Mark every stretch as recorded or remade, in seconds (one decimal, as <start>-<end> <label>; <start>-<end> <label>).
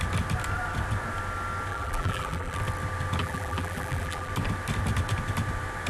0.0-1.7 recorded; 1.7-2.6 remade; 2.6-3.2 recorded; 3.2-4.3 remade; 4.3-5.9 recorded